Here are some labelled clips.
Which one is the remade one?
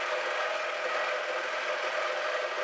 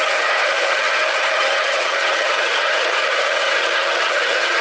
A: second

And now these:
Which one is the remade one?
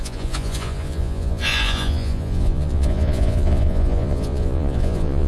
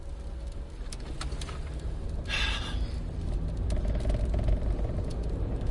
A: first